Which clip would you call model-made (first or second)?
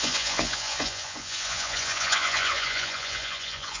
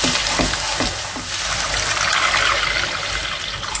first